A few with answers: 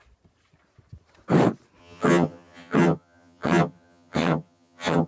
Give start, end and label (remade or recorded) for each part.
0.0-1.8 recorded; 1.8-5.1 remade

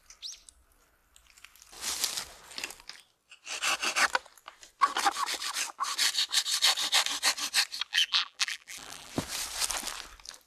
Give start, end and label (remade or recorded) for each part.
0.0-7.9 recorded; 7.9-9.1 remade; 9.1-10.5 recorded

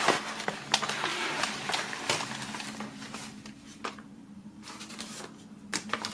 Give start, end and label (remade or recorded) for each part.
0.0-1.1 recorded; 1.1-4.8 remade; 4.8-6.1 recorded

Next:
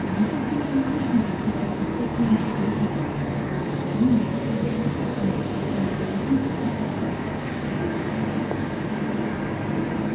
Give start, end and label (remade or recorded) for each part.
0.0-10.1 remade

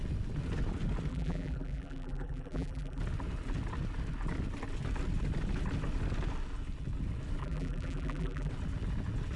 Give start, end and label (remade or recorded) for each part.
0.0-1.1 recorded; 1.1-3.0 remade; 3.0-7.4 recorded; 7.4-8.5 remade; 8.5-9.4 recorded

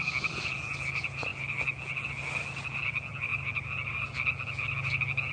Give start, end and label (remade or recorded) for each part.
0.0-5.3 recorded

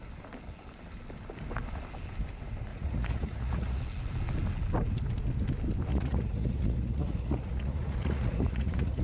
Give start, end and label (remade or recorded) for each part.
0.0-2.7 recorded; 2.7-3.8 remade; 3.8-5.9 recorded; 5.9-9.0 remade

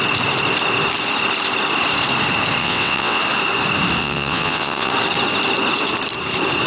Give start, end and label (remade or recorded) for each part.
0.0-2.6 recorded; 2.6-3.2 remade; 3.2-4.0 recorded; 4.0-4.9 remade; 4.9-6.7 recorded